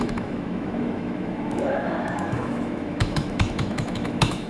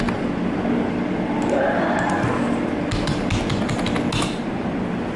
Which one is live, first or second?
second